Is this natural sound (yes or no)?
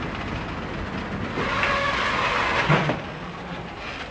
yes